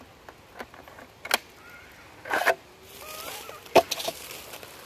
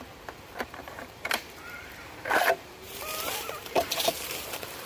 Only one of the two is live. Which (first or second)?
first